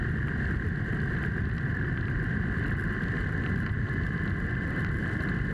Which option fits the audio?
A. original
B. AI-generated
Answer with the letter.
A